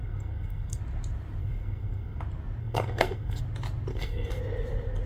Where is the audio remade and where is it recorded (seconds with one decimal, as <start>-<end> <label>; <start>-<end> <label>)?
0.0-0.8 remade; 0.8-1.4 recorded; 1.4-2.2 remade; 2.2-2.6 recorded; 2.6-3.4 remade; 3.4-3.9 recorded; 3.9-4.4 remade; 4.4-5.1 recorded